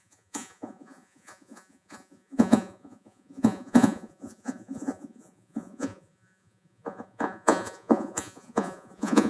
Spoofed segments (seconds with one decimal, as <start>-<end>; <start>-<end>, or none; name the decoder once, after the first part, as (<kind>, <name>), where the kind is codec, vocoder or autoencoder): 0.0-9.3 (vocoder, Vocos)